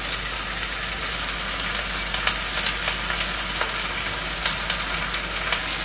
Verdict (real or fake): real